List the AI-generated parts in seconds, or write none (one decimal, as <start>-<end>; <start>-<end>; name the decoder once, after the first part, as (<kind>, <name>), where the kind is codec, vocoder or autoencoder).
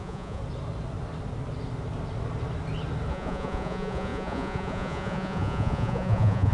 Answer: 0.0-0.4 (vocoder, Vocos); 3.1-6.5